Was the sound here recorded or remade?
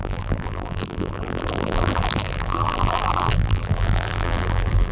remade